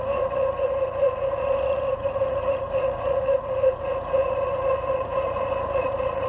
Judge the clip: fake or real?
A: fake